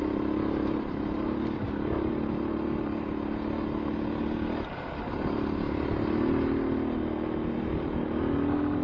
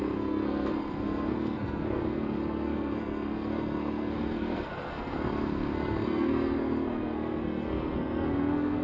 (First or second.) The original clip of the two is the first